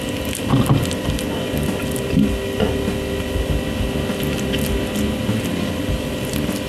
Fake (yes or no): no